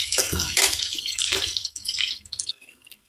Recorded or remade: remade